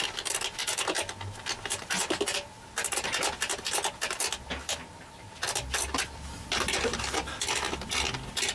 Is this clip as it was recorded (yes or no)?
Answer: yes